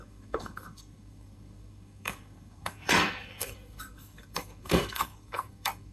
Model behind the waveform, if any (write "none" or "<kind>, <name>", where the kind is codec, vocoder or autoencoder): codec, SNAC